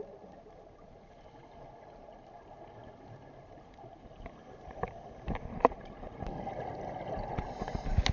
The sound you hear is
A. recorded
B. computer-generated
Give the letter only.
A